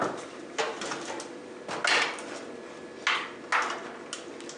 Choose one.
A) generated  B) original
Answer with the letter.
B